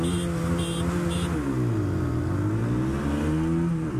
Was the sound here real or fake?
real